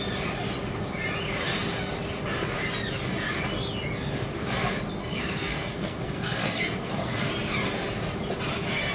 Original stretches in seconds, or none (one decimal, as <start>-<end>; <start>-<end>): 0.0-5.0; 7.3-8.9